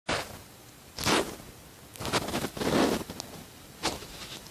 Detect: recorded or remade recorded